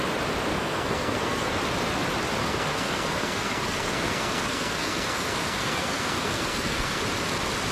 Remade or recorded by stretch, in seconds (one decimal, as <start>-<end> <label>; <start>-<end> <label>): 0.0-0.5 recorded; 0.5-1.6 remade; 1.6-2.4 recorded; 2.4-7.0 remade; 7.0-7.7 recorded